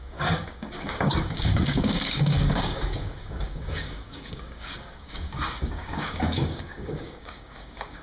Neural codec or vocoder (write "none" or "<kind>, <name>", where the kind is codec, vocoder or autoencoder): codec, DAC